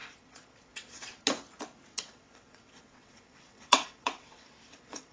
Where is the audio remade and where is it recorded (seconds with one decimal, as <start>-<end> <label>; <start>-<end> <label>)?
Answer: 0.0-1.2 remade; 1.2-1.9 recorded; 1.9-5.1 remade